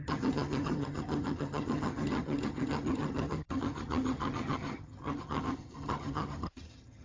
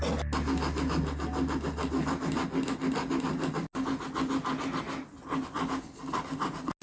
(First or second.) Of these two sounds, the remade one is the first